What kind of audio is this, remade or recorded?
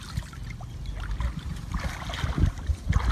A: recorded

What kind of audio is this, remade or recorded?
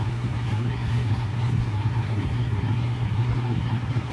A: remade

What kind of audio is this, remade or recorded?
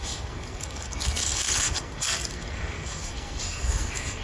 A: remade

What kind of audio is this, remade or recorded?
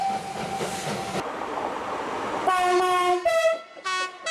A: recorded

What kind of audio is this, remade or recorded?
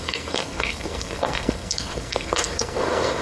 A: remade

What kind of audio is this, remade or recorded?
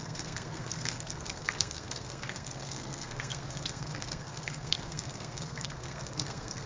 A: remade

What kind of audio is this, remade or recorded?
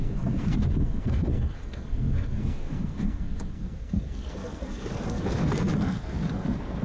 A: remade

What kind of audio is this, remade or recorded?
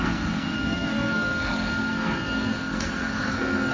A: remade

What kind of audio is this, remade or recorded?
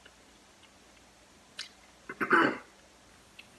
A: recorded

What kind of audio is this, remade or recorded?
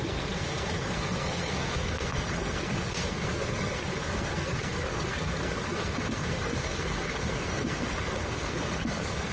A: remade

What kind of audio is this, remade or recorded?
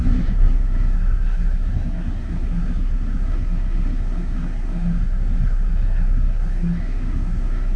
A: remade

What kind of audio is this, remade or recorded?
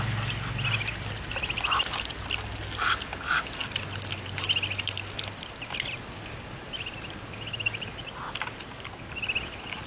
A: recorded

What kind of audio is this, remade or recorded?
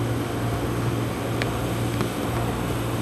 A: recorded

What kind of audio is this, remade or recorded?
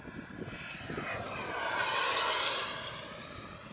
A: recorded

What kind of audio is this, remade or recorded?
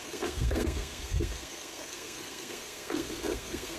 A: remade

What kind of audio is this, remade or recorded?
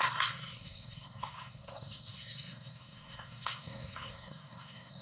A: remade